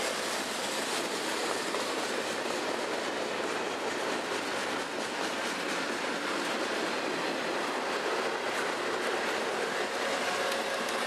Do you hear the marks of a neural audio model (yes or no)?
no